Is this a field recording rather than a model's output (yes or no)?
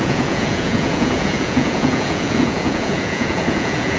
no